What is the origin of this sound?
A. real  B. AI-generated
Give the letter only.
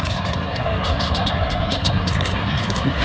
B